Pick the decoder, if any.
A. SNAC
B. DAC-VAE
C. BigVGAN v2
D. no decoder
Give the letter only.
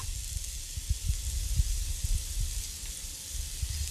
D